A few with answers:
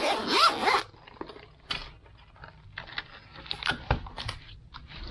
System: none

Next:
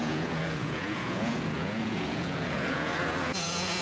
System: vocoder, Vocos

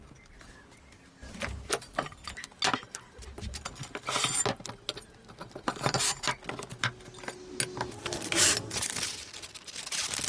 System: none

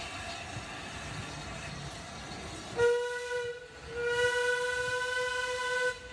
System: none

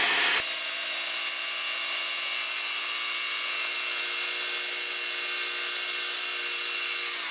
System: none